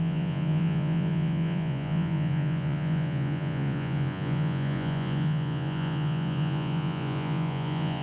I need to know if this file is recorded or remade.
remade